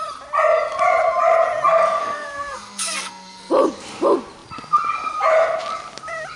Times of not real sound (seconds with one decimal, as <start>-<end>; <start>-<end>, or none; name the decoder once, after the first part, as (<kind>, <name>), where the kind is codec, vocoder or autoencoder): 2.0-3.5 (codec, SNAC)